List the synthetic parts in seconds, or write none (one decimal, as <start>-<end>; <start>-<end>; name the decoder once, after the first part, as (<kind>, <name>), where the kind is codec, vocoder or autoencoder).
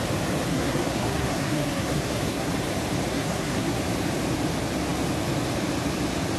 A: 0.5-2.5 (codec, SNAC); 3.1-3.8